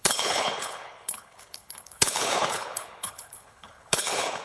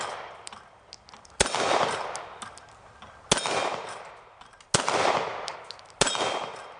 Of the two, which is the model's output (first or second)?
first